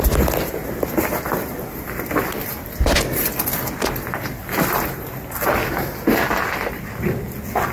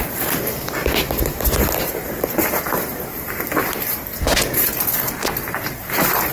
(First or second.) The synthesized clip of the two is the second